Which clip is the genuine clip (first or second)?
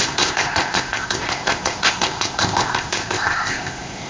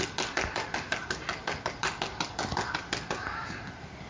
second